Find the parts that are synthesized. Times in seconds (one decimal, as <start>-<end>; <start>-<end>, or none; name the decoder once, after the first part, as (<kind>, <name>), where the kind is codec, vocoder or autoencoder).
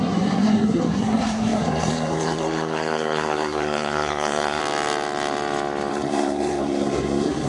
0.0-4.6 (codec, SNAC); 5.9-7.5